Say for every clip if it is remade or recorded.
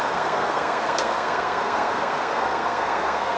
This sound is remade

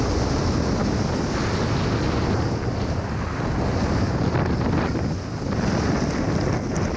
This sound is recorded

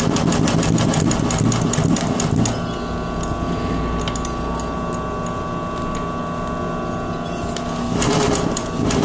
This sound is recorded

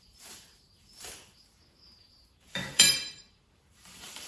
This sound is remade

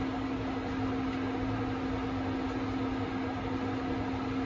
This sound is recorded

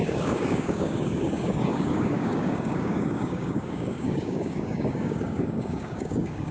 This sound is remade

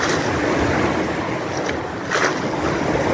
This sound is recorded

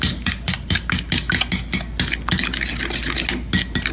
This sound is recorded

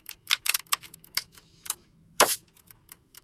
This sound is remade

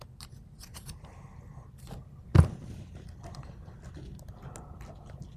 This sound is recorded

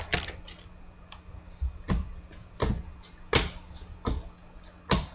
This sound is recorded